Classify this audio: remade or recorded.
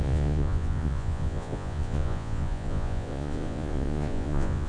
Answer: remade